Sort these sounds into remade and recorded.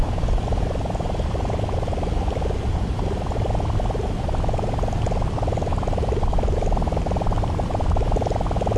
recorded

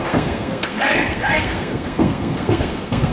remade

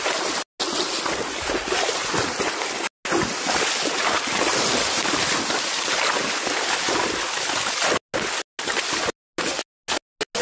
recorded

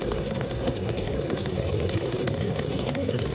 remade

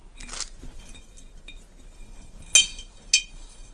recorded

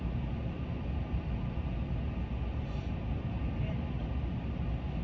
recorded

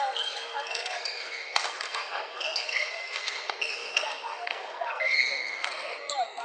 remade